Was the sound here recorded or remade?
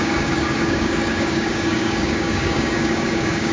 remade